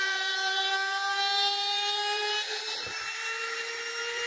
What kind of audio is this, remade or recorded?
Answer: remade